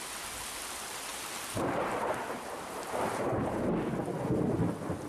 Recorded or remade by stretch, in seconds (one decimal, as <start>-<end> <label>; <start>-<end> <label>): 0.0-1.1 recorded; 1.1-3.7 remade; 3.7-5.1 recorded